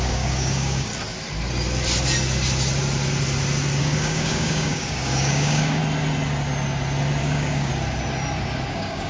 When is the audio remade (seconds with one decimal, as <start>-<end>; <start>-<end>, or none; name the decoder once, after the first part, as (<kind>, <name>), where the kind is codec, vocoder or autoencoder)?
0.0-0.9 (codec, DAC); 3.8-5.8; 7.2-7.7; 8.7-9.1